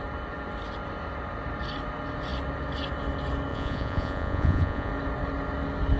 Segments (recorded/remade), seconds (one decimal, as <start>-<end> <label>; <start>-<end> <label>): 0.0-3.5 recorded; 3.5-4.9 remade; 4.9-6.0 recorded